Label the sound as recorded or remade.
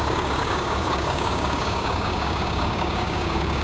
remade